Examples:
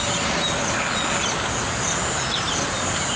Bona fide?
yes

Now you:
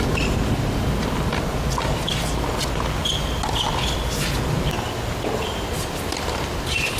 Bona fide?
yes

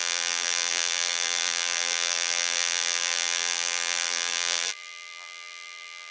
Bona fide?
no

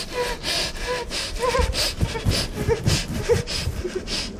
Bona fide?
yes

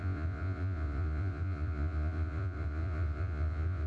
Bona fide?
no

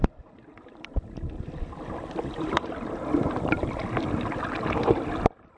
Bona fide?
yes